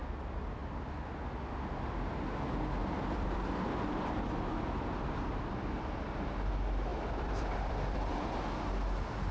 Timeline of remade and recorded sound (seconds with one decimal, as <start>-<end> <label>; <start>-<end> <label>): 0.0-2.8 recorded; 2.8-4.1 remade; 4.1-6.9 recorded; 6.9-8.3 remade; 8.3-9.3 recorded